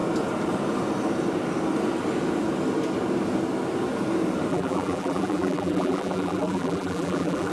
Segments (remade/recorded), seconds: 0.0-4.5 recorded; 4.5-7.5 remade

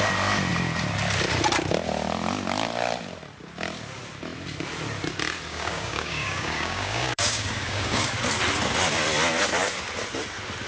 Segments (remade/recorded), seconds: 0.0-5.5 recorded; 5.5-8.1 remade; 8.1-10.7 recorded

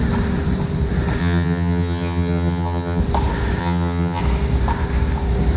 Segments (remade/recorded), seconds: 0.0-1.2 recorded; 1.2-3.0 remade; 3.0-3.6 recorded; 3.6-4.2 remade; 4.2-5.6 recorded

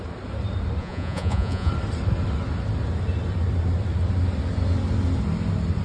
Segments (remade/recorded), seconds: 0.0-0.8 recorded; 0.8-1.7 remade; 1.7-5.8 recorded

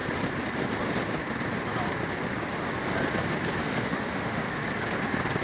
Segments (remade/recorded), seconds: 0.0-3.6 recorded; 3.6-4.6 remade; 4.6-5.4 recorded

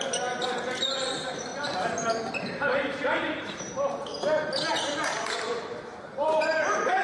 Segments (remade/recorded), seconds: 0.0-1.5 remade; 1.5-2.4 recorded; 2.4-4.1 remade; 4.1-4.8 recorded; 4.8-7.0 remade

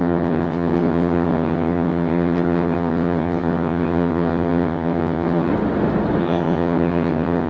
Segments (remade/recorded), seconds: 0.0-5.5 remade; 5.5-6.2 recorded; 6.2-7.5 remade